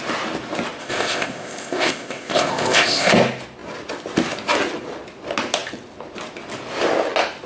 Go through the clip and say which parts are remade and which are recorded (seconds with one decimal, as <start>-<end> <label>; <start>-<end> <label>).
0.0-0.8 recorded; 0.8-3.1 remade; 3.1-7.5 recorded